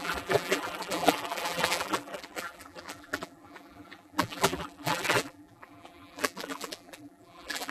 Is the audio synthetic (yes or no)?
yes